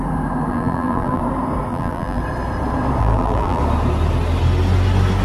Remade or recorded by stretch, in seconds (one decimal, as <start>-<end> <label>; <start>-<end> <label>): 0.0-0.5 recorded; 0.5-1.2 remade; 1.2-1.7 recorded; 1.7-2.2 remade; 2.2-3.0 recorded; 3.0-3.6 remade; 3.6-5.2 recorded